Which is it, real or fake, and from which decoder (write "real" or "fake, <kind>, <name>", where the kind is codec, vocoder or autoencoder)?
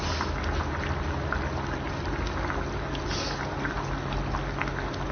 real